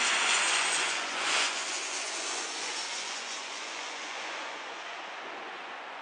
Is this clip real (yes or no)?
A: no